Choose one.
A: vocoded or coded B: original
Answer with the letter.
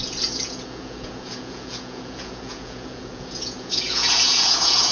A